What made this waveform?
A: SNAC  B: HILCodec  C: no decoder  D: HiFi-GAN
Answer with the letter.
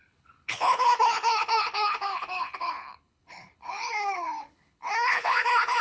B